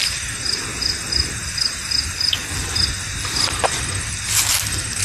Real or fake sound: real